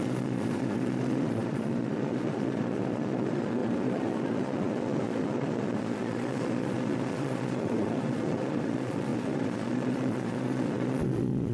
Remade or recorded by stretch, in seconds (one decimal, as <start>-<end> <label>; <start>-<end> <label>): 0.0-11.5 remade